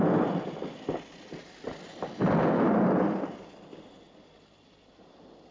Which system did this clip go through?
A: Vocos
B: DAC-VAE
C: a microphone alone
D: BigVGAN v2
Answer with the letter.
C